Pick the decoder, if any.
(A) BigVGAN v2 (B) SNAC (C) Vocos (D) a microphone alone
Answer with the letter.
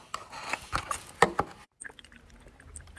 D